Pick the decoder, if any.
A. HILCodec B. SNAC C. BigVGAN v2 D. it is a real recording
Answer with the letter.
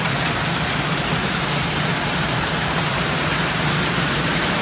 C